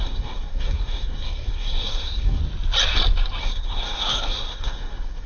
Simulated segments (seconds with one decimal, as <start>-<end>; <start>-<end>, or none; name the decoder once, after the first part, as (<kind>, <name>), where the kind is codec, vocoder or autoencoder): 0.0-2.4 (codec, SNAC); 3.4-5.3